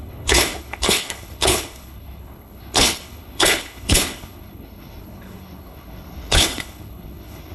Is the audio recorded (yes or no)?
no